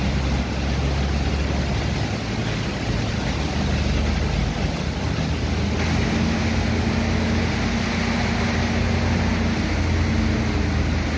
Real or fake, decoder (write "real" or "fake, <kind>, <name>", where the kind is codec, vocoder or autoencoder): real